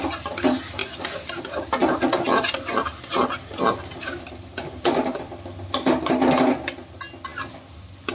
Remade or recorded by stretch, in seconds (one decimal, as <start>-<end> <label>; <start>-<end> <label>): 0.0-8.1 recorded